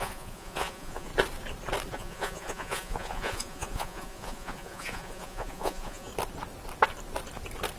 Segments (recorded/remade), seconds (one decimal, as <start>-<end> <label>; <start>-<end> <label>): 0.0-1.1 remade; 1.1-1.9 recorded; 1.9-6.1 remade; 6.1-7.8 recorded